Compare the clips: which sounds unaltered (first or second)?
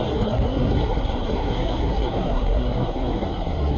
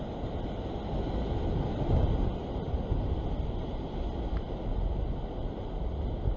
second